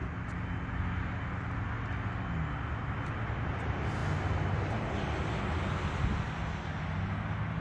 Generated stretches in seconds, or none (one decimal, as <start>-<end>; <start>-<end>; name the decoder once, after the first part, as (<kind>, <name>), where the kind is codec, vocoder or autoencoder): none